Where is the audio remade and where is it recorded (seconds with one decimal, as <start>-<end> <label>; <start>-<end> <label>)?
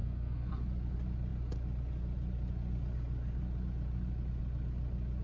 0.0-0.5 remade; 0.5-5.2 recorded